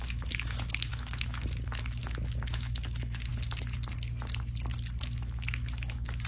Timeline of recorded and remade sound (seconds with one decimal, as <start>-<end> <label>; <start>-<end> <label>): 0.0-3.3 remade; 3.3-5.0 recorded; 5.0-6.3 remade